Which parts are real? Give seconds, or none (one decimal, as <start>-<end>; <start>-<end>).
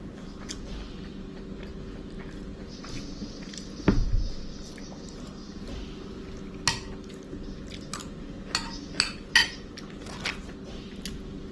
0.0-11.5